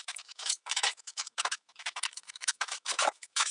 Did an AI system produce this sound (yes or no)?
yes